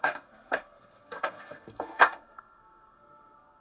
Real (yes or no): no